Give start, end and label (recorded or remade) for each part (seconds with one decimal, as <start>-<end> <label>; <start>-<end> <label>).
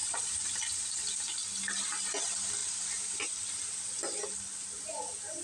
0.0-0.6 remade; 0.6-5.4 recorded